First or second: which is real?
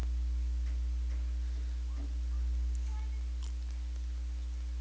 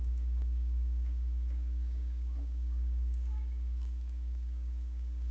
first